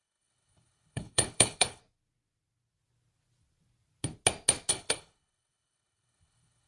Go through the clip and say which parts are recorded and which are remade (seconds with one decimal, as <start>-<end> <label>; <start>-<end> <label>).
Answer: 0.0-1.8 remade; 1.8-4.7 recorded; 4.7-6.7 remade